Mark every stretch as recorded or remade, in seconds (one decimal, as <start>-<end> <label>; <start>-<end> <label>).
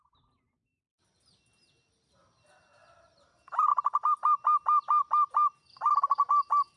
0.0-6.8 recorded